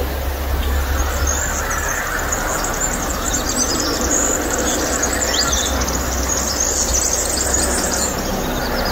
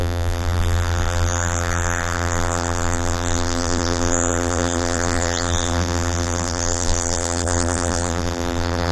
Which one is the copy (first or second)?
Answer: second